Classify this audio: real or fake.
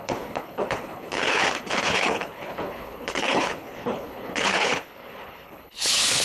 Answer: fake